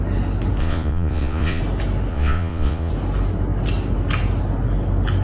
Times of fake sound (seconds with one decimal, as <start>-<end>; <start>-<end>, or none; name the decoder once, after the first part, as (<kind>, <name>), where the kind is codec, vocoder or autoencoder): 0.6-1.6 (vocoder, Vocos); 2.1-2.9